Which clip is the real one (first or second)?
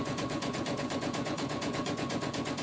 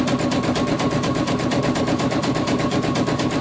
second